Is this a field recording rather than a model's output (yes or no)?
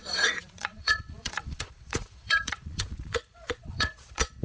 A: no